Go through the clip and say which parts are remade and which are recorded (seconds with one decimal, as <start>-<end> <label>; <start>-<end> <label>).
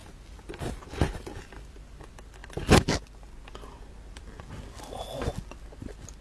0.0-6.2 recorded